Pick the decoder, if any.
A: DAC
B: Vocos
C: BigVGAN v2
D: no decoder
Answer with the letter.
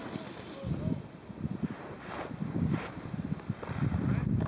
D